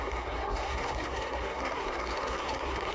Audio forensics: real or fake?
fake